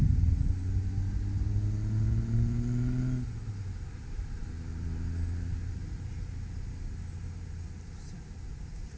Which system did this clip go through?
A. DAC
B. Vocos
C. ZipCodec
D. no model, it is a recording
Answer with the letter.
D